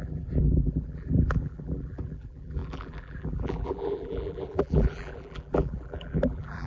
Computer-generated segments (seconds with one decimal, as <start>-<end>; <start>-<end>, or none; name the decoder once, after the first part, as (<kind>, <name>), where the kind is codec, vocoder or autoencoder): 0.0-6.7 (vocoder, BigVGAN v2)